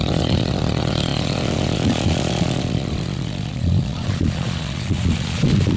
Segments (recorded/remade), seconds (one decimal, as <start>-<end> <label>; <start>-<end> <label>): 0.0-5.8 remade

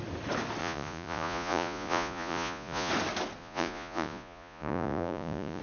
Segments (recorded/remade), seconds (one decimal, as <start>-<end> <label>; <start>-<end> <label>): 0.0-0.6 recorded; 0.6-2.9 remade; 2.9-3.4 recorded; 3.4-5.6 remade

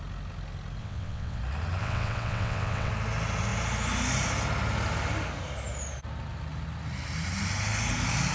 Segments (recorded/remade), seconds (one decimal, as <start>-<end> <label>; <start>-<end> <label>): 0.0-0.8 recorded; 0.8-1.4 remade; 1.4-1.8 recorded; 1.8-2.9 remade; 2.9-8.3 recorded

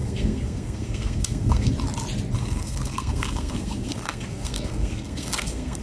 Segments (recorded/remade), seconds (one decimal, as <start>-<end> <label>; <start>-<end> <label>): 0.0-1.7 remade; 1.7-2.4 recorded; 2.4-5.8 remade

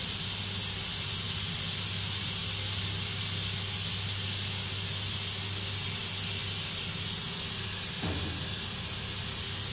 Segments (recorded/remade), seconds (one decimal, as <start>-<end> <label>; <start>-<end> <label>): 0.0-9.7 recorded

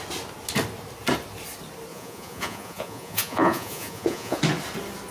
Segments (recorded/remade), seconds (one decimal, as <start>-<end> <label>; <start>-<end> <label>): 0.0-1.9 recorded; 1.9-4.4 remade; 4.4-5.1 recorded

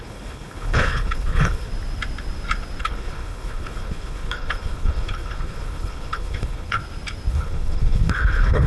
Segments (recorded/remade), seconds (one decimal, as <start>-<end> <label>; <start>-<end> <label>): 0.0-1.7 remade; 1.7-2.8 recorded; 2.8-6.8 remade; 6.8-7.3 recorded; 7.3-8.7 remade